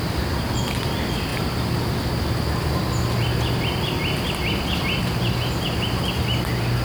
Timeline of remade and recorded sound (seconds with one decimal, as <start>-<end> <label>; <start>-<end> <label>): 0.0-6.8 recorded